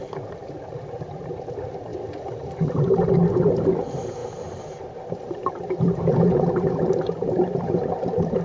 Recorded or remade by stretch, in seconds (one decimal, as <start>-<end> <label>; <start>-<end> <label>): 0.0-1.9 remade; 1.9-2.8 recorded; 2.8-8.4 remade

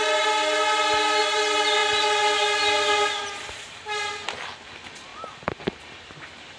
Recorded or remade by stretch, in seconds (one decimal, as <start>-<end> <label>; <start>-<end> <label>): 0.0-6.6 recorded

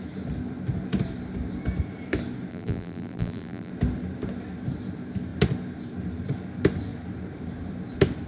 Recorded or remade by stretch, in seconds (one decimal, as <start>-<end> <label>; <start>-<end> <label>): 0.0-2.5 recorded; 2.5-3.7 remade; 3.7-8.3 recorded

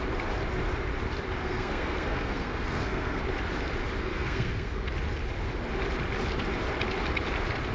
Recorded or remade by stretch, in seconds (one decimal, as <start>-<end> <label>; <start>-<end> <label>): 0.0-1.4 recorded; 1.4-3.2 remade; 3.2-4.0 recorded; 4.0-4.9 remade; 4.9-7.7 recorded

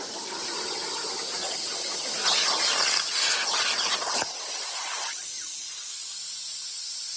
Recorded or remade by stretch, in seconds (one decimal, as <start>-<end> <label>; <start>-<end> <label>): 0.0-1.4 recorded; 1.4-5.7 remade; 5.7-7.2 recorded

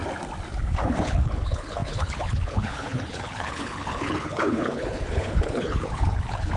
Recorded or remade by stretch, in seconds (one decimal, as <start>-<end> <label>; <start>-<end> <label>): 0.0-0.6 recorded; 0.6-6.6 remade

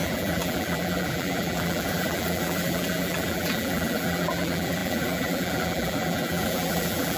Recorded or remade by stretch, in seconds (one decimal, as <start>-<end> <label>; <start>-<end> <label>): 0.0-7.2 remade